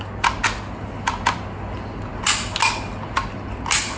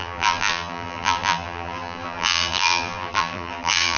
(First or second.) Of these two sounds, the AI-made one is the second